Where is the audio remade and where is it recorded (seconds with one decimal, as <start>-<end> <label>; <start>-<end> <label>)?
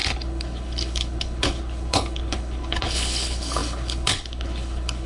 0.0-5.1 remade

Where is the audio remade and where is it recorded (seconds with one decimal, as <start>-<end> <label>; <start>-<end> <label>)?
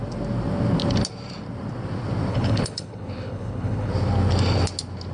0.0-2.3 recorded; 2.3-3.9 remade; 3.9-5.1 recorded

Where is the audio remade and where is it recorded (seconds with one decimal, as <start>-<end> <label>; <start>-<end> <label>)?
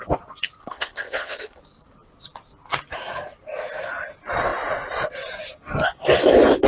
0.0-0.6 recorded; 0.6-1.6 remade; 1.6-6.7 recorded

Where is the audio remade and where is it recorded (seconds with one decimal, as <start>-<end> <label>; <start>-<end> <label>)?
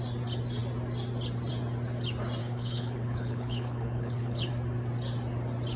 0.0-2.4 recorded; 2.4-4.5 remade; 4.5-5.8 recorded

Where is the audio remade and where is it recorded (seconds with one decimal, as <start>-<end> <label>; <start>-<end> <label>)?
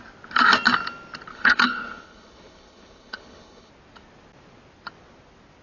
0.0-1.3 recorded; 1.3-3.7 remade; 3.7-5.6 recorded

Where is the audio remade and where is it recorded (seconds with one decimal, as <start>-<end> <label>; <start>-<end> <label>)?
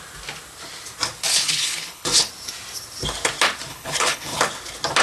0.0-1.3 recorded; 1.3-2.3 remade; 2.3-3.7 recorded; 3.7-4.4 remade; 4.4-5.0 recorded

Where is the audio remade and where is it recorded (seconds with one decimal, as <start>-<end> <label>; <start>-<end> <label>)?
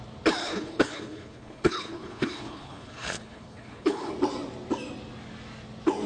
0.0-0.4 recorded; 0.4-4.1 remade; 4.1-6.1 recorded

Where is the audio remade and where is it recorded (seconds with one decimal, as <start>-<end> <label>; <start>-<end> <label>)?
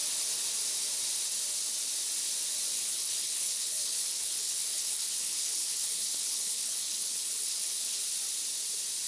0.0-2.8 recorded; 2.8-8.0 remade; 8.0-9.1 recorded